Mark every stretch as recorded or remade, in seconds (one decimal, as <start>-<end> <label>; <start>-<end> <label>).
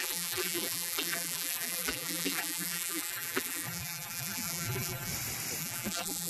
0.0-5.1 remade; 5.1-5.6 recorded; 5.6-6.3 remade